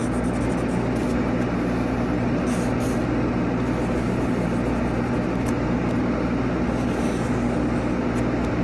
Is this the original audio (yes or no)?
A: yes